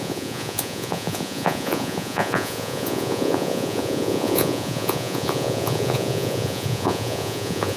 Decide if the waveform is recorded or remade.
remade